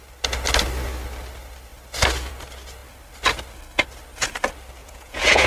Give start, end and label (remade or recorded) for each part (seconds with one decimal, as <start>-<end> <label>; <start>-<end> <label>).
0.0-4.8 recorded; 4.8-5.5 remade